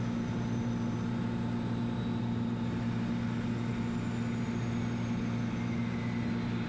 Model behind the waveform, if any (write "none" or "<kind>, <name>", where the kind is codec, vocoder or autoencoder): none